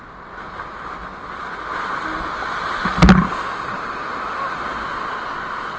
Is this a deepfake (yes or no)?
no